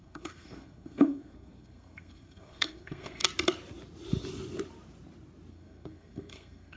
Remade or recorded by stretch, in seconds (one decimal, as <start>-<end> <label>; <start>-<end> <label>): 0.0-3.2 remade; 3.2-5.5 recorded; 5.5-6.8 remade